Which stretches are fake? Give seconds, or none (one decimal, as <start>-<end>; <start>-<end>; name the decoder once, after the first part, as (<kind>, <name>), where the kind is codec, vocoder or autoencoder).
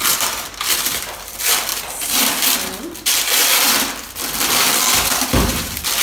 0.0-6.0 (vocoder, BigVGAN v2)